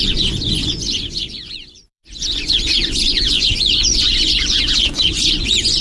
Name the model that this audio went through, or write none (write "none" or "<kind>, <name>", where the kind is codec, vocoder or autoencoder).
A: vocoder, Vocos